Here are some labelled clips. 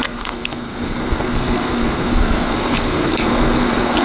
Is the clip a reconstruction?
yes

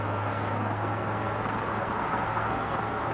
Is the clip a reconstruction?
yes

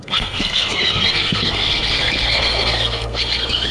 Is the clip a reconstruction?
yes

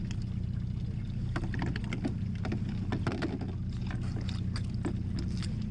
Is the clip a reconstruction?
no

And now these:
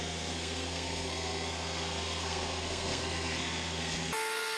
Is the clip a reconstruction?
yes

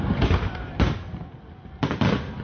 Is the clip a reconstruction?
no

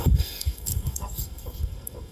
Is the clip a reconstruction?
yes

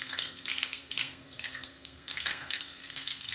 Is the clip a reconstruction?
yes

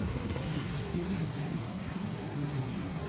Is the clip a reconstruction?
yes